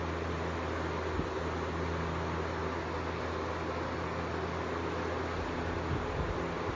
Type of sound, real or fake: real